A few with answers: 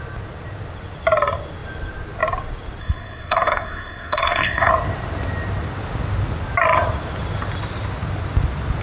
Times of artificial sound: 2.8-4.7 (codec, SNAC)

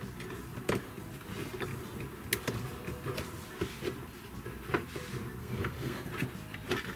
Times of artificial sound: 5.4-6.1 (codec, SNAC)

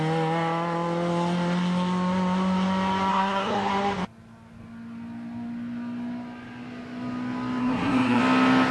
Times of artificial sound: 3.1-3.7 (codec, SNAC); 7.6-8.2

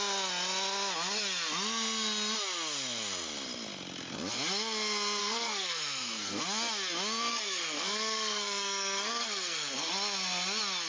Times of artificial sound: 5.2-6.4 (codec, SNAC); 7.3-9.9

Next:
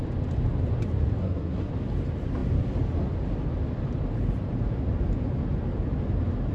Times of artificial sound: 1.2-1.7 (codec, SNAC)

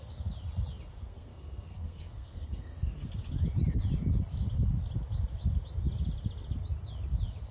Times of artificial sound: 1.0-3.1 (codec, SNAC)

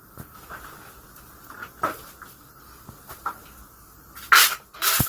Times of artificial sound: none

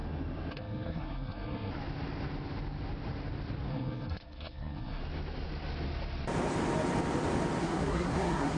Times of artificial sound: 0.5-1.7 (codec, SNAC); 3.7-5.0; 7.6-8.6